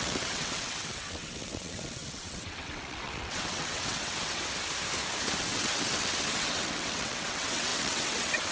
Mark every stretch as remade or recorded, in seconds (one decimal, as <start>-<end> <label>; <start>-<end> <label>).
0.0-4.4 remade; 4.4-5.4 recorded; 5.4-8.5 remade